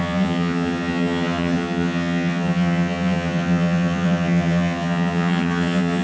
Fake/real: fake